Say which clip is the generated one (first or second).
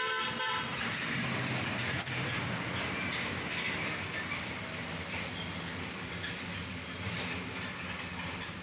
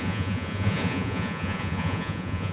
second